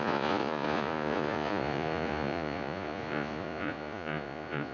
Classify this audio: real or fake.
fake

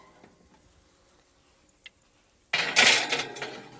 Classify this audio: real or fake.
real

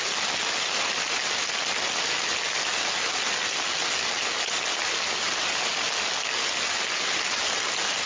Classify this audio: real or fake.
real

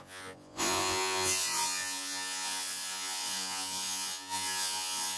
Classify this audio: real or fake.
fake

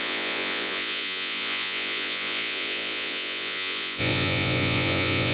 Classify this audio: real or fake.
fake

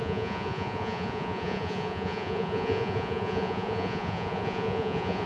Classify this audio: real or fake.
fake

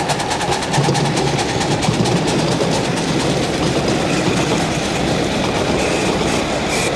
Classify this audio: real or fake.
real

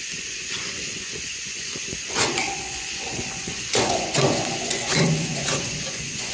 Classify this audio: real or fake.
fake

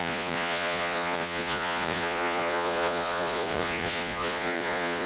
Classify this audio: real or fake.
fake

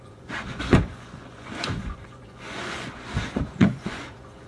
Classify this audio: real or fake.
fake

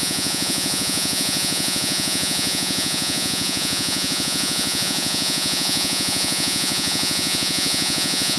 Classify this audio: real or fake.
fake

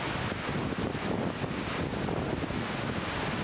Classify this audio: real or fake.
real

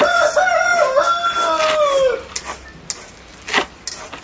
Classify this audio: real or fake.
real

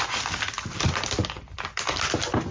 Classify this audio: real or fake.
real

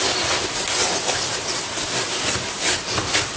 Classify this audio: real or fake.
real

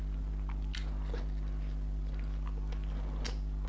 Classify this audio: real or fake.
real